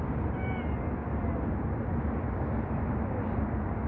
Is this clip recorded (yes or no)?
yes